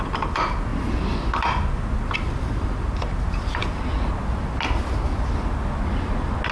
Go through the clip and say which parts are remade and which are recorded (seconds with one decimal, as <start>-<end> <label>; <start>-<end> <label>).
0.0-6.5 recorded